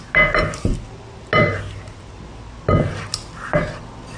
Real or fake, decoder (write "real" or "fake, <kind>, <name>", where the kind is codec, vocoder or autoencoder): real